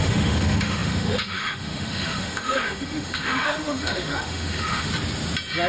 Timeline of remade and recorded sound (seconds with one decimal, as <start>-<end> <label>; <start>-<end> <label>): 0.0-4.9 remade; 4.9-5.7 recorded